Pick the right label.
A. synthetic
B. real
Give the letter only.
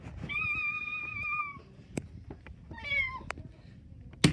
B